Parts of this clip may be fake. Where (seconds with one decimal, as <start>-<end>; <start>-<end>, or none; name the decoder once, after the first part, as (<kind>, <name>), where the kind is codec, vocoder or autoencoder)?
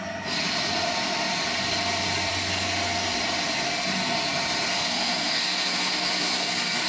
4.7-6.9 (codec, SNAC)